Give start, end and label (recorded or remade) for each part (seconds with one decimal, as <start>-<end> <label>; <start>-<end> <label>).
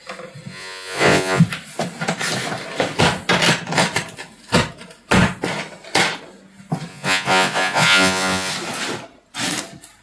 0.0-0.5 recorded; 0.5-1.4 remade; 1.4-6.9 recorded; 6.9-8.5 remade; 8.5-10.0 recorded